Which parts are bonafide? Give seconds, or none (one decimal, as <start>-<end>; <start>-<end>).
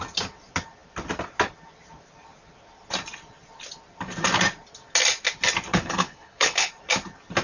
0.0-5.7; 6.7-7.4